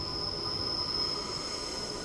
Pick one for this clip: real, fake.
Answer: real